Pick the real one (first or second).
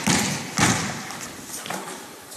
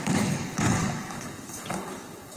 first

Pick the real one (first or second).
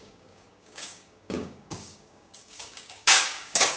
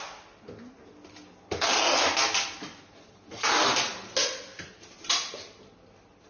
second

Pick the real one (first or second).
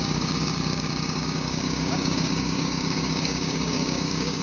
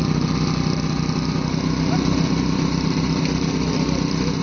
second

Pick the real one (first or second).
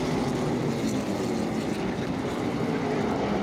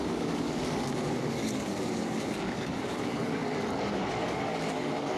first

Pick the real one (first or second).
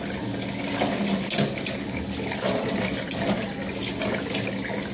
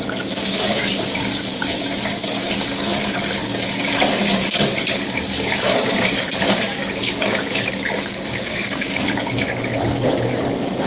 first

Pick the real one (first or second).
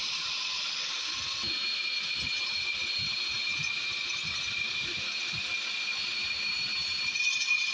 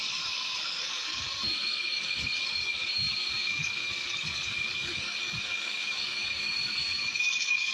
first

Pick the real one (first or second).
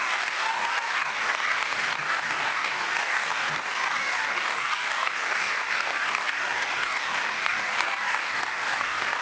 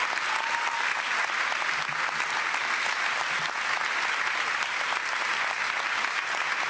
second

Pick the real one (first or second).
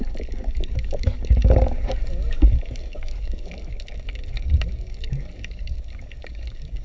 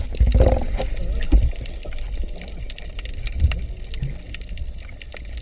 second